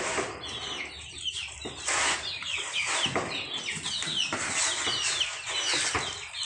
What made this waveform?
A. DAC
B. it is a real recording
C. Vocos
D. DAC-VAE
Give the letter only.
B